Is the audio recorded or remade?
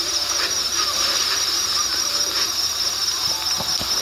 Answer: recorded